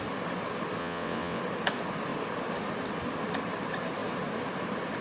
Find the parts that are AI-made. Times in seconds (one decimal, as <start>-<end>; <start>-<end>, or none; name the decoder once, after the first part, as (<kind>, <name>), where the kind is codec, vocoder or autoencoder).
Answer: 0.8-1.4 (vocoder, WaveNeXt)